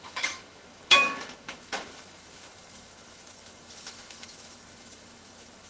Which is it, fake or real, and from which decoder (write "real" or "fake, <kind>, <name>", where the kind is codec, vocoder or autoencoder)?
fake, autoencoder, DAC-VAE